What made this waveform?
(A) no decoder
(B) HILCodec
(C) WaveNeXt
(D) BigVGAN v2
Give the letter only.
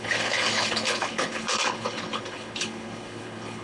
B